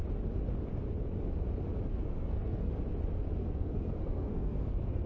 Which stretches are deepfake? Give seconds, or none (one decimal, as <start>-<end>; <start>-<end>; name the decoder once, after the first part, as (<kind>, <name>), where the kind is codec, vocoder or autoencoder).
1.9-2.7 (codec, SNAC); 3.4-5.1